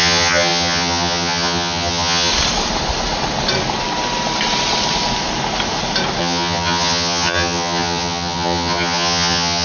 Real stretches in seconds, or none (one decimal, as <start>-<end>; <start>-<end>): 2.3-6.2